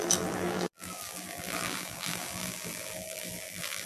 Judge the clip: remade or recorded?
remade